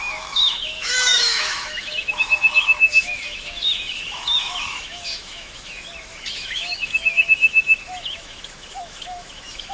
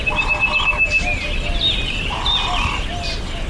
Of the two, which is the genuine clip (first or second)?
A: second